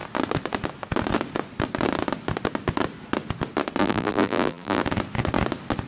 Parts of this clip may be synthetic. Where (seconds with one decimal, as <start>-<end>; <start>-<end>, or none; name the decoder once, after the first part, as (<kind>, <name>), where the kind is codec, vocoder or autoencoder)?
3.8-4.8 (vocoder, BigVGAN v2)